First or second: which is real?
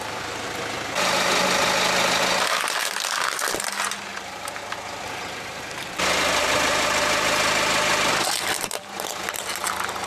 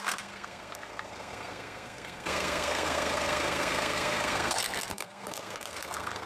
first